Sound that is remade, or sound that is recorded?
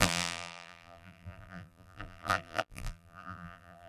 remade